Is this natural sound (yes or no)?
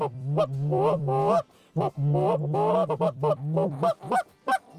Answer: no